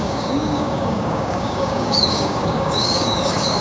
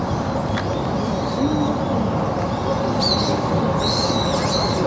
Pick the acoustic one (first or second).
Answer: second